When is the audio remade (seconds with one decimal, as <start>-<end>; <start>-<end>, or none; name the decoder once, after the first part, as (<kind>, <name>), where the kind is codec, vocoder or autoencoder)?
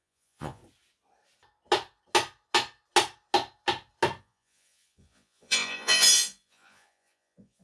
0.0-0.6 (vocoder, Vocos); 4.2-7.6